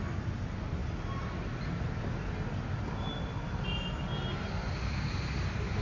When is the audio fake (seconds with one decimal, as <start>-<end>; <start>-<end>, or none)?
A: none